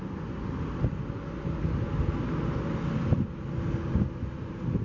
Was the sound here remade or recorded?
recorded